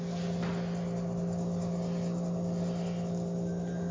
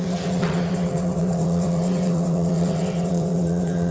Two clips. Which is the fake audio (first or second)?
second